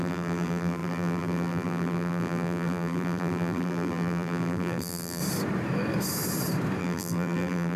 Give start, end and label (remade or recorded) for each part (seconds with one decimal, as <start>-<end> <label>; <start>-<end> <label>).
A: 0.0-5.2 remade; 5.2-6.8 recorded; 6.8-7.8 remade